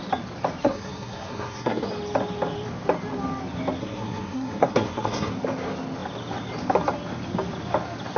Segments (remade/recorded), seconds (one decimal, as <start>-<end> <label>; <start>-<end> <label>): 0.0-0.6 recorded; 0.6-1.9 remade; 1.9-3.8 recorded; 3.8-5.3 remade; 5.3-8.2 recorded